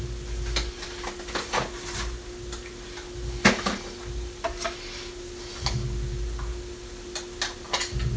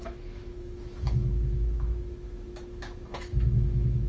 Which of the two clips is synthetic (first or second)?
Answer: second